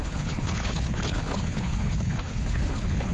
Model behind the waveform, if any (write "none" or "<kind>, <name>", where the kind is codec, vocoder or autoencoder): codec, HILCodec